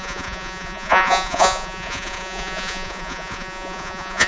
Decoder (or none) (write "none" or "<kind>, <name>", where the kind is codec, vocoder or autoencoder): vocoder, Vocos